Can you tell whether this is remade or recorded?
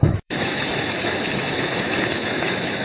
remade